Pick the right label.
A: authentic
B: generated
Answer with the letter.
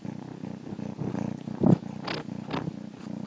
A